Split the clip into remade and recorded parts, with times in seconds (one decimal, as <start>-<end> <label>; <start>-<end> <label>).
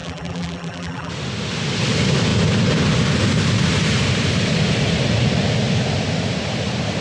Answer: 0.0-1.1 remade; 1.1-7.0 recorded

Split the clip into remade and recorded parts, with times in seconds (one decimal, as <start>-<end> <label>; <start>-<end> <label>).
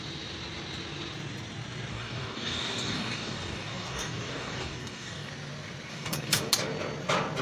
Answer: 0.0-1.9 recorded; 1.9-5.3 remade; 5.3-5.9 recorded; 5.9-6.5 remade; 6.5-7.4 recorded